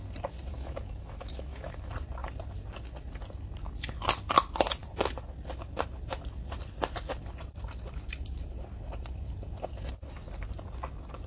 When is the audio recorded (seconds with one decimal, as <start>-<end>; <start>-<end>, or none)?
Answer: 0.0-0.5; 1.8-11.3